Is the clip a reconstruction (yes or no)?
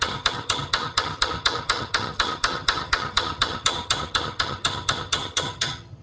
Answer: yes